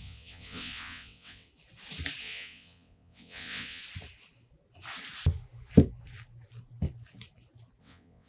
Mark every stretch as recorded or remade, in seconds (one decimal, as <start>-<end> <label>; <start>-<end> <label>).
0.0-1.5 remade; 1.5-2.2 recorded; 2.2-3.8 remade; 3.8-7.8 recorded; 7.8-8.3 remade

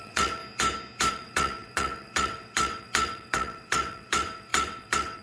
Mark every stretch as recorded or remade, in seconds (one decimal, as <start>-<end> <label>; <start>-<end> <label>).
0.0-0.4 remade; 0.4-1.1 recorded; 1.1-5.2 remade

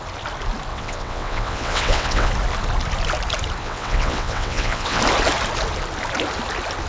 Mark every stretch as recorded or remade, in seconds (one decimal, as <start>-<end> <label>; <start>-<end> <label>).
0.0-0.7 recorded; 0.7-2.3 remade; 2.3-3.6 recorded; 3.6-5.0 remade; 5.0-6.9 recorded

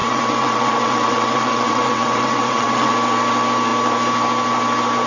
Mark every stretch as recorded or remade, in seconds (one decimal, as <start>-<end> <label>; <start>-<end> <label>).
0.0-2.9 remade; 2.9-5.1 recorded

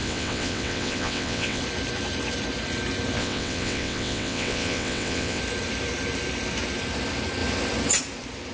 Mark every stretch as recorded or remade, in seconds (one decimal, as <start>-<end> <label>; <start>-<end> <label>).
0.0-1.6 remade; 1.6-3.2 recorded; 3.2-5.4 remade; 5.4-8.5 recorded

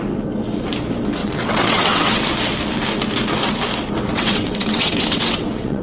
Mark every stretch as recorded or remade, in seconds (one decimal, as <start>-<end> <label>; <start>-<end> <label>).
0.0-1.2 recorded; 1.2-2.2 remade; 2.2-4.1 recorded; 4.1-5.8 remade